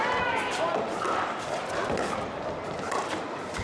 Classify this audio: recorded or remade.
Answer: recorded